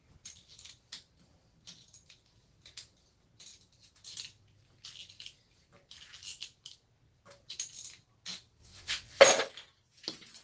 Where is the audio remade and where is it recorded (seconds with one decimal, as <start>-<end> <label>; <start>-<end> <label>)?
0.0-8.6 recorded; 8.6-9.2 remade; 9.2-10.4 recorded